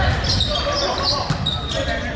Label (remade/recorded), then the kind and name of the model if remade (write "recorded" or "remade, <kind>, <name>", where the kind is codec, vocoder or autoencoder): remade, vocoder, BigVGAN v2